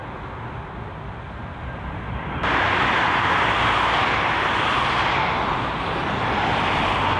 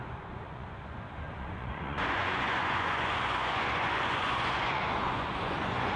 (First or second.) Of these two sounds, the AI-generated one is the second